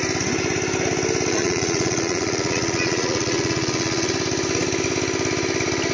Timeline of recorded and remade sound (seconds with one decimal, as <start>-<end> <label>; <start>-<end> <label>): 0.0-1.3 recorded; 1.3-4.1 remade; 4.1-5.9 recorded